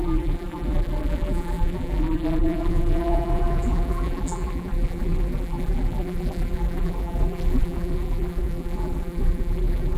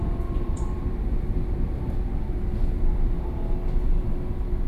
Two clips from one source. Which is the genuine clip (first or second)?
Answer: second